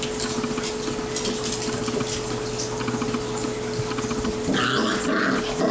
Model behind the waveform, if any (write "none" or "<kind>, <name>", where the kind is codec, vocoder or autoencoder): none